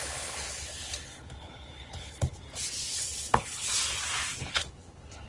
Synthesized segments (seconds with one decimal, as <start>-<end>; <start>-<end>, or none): 0.0-2.4; 2.9-3.7; 4.4-5.3